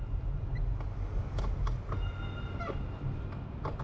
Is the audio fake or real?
real